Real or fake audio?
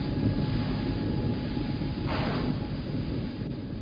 real